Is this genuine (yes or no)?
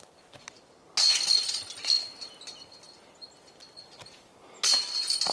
yes